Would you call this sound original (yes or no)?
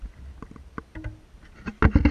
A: yes